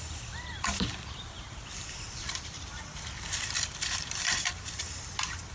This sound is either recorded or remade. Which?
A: remade